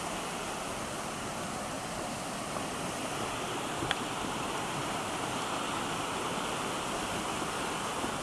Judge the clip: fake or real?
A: fake